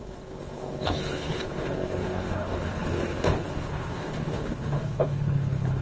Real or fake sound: fake